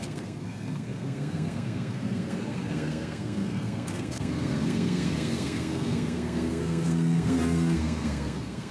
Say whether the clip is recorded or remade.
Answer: remade